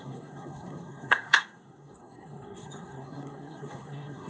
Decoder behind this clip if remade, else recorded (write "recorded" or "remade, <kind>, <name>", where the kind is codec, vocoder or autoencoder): remade, codec, SNAC